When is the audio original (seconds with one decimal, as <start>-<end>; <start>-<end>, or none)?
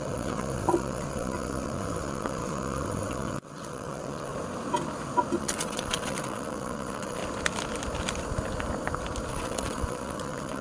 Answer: 4.3-5.4; 7.2-9.3